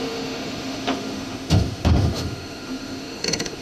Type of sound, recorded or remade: remade